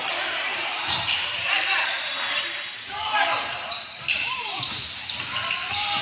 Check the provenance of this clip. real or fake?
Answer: fake